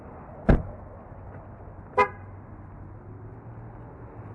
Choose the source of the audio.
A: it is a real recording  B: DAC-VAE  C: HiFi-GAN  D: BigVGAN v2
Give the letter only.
A